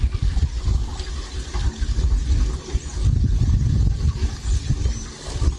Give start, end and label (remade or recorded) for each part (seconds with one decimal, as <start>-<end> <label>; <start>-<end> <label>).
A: 0.0-5.6 recorded